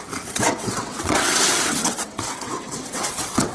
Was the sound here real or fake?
fake